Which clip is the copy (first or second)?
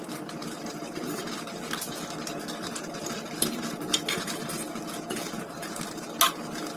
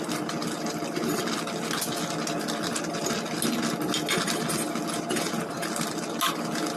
first